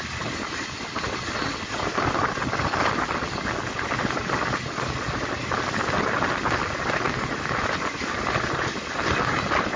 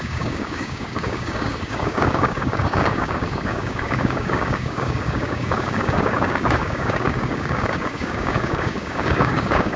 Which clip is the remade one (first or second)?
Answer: second